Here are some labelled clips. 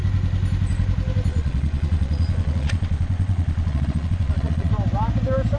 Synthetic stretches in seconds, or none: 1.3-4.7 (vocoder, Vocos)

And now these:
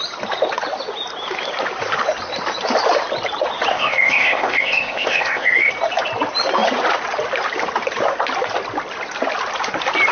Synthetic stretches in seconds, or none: 3.7-5.7 (codec, ZipCodec)

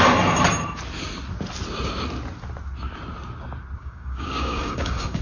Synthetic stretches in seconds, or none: 3.8-5.2 (codec, DAC)

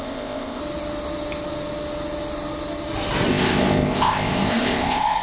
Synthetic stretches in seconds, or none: 0.0-0.6 (codec, ZipCodec); 3.3-5.2

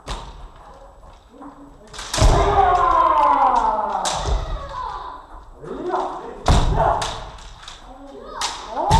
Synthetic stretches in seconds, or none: 2.7-5.9 (vocoder, BigVGAN v2)

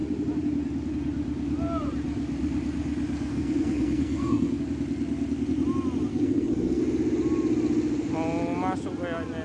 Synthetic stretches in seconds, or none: 3.3-4.6 (codec, SNAC); 6.1-6.8

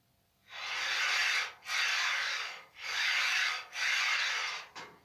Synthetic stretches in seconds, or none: 1.9-4.0 (codec, DAC)